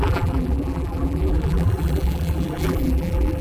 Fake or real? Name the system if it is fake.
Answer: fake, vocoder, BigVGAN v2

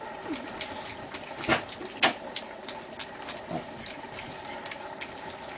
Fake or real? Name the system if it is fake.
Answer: real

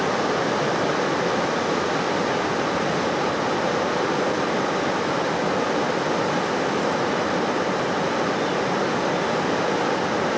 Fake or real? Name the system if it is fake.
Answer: real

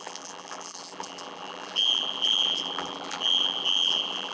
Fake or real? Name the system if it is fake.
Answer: fake, vocoder, BigVGAN v2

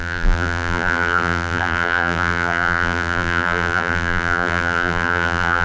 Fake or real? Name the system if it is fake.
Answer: fake, vocoder, BigVGAN v2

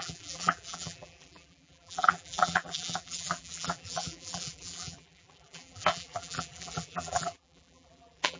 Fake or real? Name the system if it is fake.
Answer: fake, vocoder, BigVGAN v2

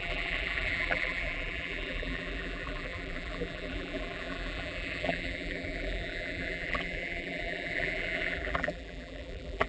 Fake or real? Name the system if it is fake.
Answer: fake, vocoder, BigVGAN v2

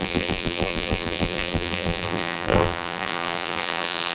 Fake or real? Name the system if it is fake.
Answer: fake, vocoder, BigVGAN v2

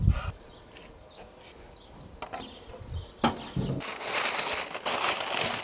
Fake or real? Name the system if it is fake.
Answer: real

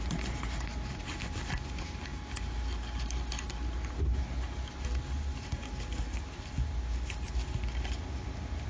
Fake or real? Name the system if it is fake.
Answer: real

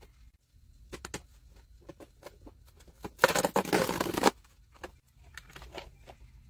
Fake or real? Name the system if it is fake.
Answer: real